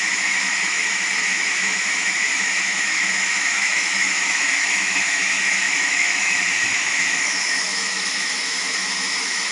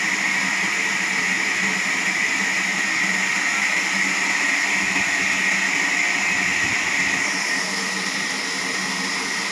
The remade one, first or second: first